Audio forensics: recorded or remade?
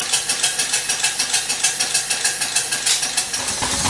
recorded